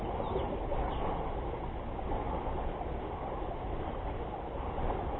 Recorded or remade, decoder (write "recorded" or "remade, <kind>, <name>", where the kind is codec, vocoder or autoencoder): recorded